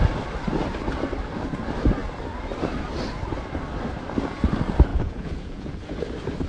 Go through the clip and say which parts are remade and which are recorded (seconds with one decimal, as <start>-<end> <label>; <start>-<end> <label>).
0.0-4.9 recorded; 4.9-6.0 remade; 6.0-6.5 recorded

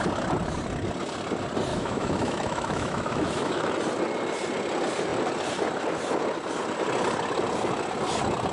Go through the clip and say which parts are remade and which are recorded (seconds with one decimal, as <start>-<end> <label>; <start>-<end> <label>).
0.0-1.7 recorded; 1.7-3.7 remade; 3.7-8.5 recorded

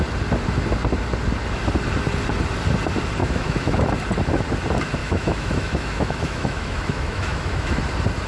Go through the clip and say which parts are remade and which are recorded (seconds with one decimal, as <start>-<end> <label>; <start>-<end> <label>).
0.0-3.2 recorded; 3.2-3.8 remade; 3.8-5.0 recorded; 5.0-7.8 remade; 7.8-8.3 recorded

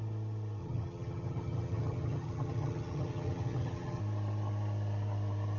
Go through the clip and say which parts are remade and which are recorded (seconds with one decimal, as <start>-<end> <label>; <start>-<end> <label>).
0.0-0.6 recorded; 0.6-4.0 remade; 4.0-5.6 recorded

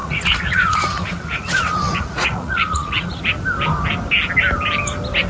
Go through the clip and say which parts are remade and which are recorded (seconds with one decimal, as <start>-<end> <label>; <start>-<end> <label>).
0.0-3.2 remade; 3.2-5.3 recorded

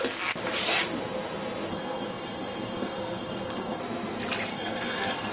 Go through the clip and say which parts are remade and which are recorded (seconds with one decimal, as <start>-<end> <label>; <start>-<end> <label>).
0.0-1.7 recorded; 1.7-3.8 remade; 3.8-4.5 recorded; 4.5-5.3 remade